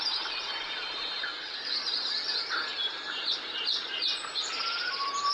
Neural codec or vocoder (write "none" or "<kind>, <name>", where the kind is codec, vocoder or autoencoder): vocoder, BigVGAN v2